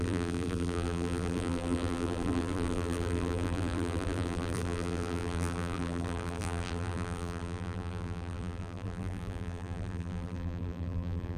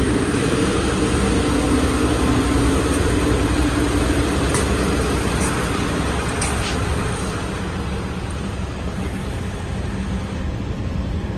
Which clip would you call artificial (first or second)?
first